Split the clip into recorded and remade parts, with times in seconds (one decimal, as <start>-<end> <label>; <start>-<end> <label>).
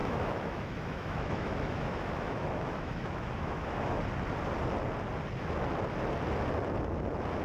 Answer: 0.0-4.0 remade; 4.0-7.4 recorded